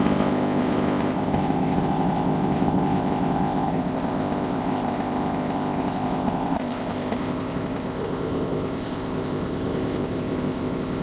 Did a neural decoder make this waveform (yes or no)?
yes